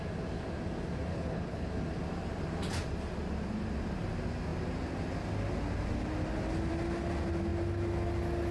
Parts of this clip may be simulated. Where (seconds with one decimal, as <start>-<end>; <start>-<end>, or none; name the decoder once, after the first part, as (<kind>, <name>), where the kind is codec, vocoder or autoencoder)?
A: 1.1-1.7 (codec, HILCodec)